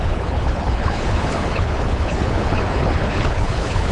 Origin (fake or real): fake